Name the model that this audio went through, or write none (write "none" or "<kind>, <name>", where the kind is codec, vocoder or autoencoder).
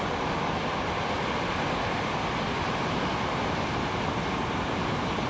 none